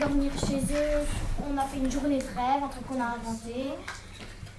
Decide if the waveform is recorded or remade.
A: recorded